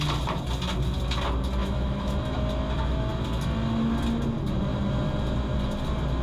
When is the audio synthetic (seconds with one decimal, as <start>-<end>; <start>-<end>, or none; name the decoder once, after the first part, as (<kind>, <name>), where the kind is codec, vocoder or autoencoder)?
1.6-2.4 (autoencoder, DAC-VAE)